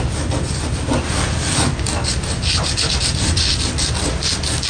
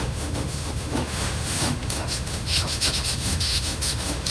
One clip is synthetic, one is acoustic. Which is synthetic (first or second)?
second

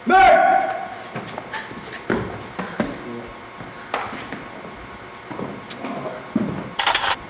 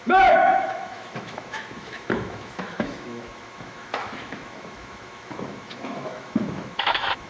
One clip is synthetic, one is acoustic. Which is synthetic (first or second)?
second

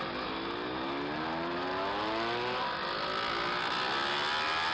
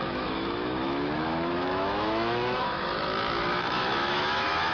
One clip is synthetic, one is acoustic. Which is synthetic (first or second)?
second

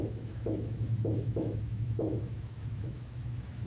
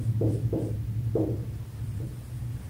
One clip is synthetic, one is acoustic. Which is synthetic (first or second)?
first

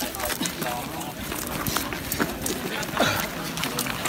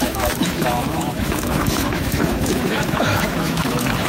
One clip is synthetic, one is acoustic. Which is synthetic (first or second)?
second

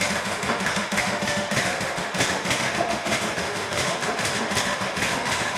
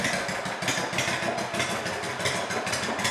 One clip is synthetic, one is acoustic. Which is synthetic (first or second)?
first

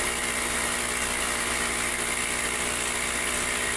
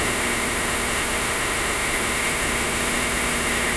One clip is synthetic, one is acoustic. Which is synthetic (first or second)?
second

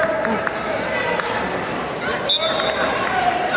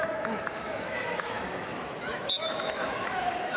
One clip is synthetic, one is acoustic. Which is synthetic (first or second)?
second